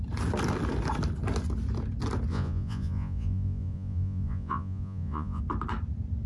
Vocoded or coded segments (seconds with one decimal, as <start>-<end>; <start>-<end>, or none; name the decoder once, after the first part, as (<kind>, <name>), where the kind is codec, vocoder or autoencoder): 2.3-5.4 (vocoder, Vocos)